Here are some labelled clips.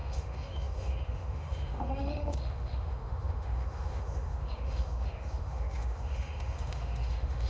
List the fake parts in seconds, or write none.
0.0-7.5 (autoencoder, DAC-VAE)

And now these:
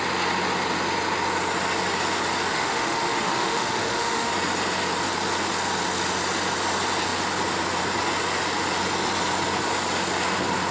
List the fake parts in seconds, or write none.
2.5-4.3 (autoencoder, DAC-VAE)

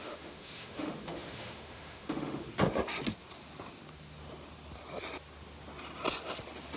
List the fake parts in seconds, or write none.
0.0-2.5 (autoencoder, DAC-VAE)

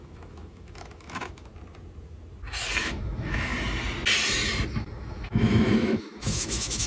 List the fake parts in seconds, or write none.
0.0-1.5 (autoencoder, DAC-VAE); 2.8-3.5; 5.0-6.9

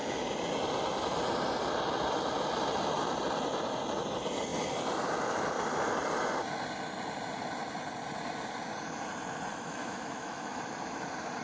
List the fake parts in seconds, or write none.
9.5-10.6 (autoencoder, DAC-VAE)

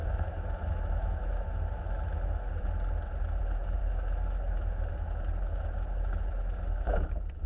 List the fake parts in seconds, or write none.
0.0-2.5 (autoencoder, DAC-VAE); 3.4-7.5